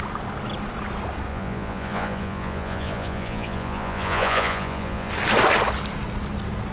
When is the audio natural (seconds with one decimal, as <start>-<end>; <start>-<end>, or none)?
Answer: 0.0-1.3; 5.1-6.7